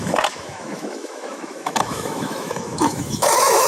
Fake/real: fake